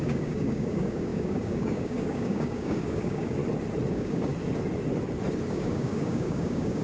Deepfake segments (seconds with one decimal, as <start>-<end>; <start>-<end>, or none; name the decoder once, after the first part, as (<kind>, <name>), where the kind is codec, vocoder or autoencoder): 0.0-3.4 (codec, DAC); 3.9-4.3; 5.5-6.8